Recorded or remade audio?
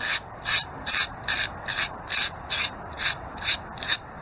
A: remade